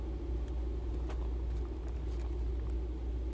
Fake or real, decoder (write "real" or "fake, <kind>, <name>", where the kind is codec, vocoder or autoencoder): real